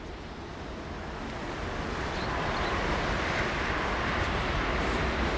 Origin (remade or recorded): recorded